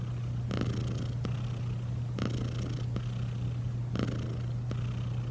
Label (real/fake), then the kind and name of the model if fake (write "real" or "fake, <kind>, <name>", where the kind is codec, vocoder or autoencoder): real